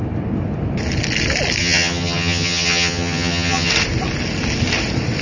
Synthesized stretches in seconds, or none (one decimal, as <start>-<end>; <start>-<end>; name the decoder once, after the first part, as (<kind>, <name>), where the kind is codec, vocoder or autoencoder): 1.6-3.7 (vocoder, HiFi-GAN)